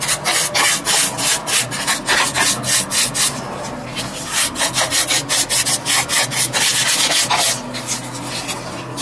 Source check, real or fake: real